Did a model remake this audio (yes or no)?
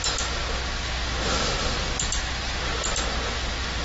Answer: no